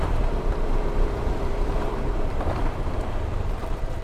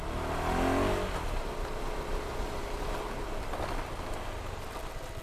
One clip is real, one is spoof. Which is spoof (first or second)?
first